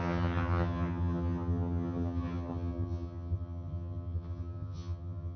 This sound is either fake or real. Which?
fake